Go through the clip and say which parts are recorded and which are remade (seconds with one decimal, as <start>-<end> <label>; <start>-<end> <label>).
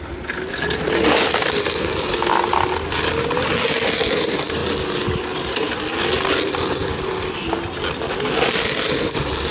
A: 0.0-9.5 recorded